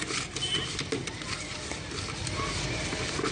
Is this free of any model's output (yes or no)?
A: yes